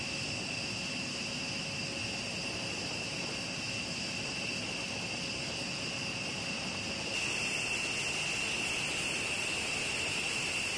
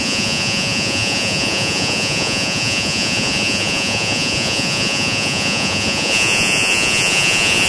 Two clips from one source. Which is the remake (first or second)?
second